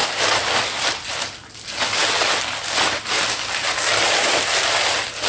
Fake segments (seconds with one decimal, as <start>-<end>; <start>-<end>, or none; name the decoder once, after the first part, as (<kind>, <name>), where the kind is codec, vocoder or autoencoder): none